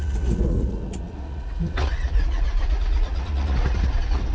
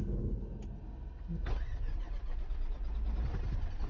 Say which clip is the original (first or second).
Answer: second